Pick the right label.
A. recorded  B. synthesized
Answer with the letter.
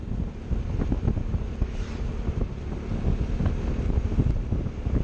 B